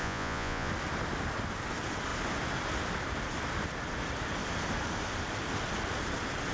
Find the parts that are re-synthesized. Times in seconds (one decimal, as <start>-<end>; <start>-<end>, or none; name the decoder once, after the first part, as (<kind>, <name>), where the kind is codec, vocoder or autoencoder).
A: 0.0-0.7 (vocoder, Vocos)